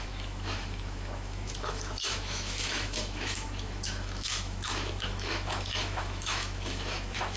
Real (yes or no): no